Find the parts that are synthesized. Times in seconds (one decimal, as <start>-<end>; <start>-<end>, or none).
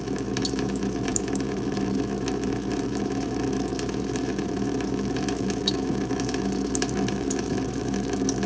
0.0-8.5